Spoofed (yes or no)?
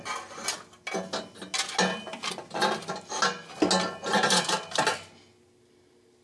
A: no